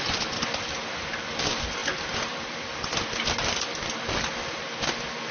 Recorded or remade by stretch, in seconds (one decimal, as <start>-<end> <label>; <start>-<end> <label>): 0.0-1.8 recorded; 1.8-4.6 remade; 4.6-5.3 recorded